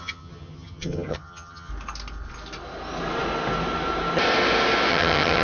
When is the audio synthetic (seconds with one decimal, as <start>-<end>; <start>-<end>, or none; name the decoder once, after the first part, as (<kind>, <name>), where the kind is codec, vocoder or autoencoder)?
0.0-1.7 (vocoder, HiFi-GAN); 4.9-5.4